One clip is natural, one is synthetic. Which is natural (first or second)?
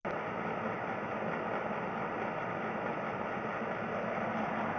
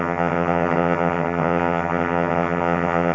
first